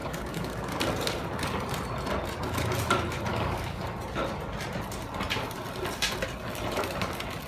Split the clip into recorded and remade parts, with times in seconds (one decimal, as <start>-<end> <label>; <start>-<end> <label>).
0.0-0.8 remade; 0.8-3.3 recorded; 3.3-3.8 remade; 3.8-7.5 recorded